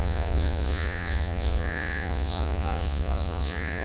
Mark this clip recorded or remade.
remade